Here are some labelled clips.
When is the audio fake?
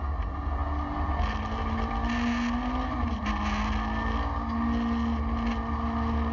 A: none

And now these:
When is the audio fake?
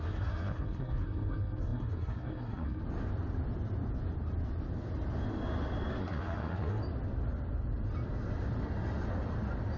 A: 0.0-2.8 (codec, SNAC); 6.0-6.8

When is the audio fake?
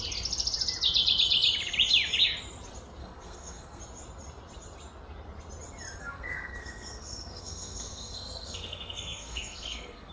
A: 3.0-3.8 (codec, SNAC); 6.0-10.1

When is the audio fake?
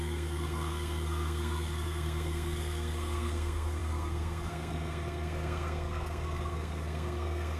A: 0.0-7.6 (codec, SNAC)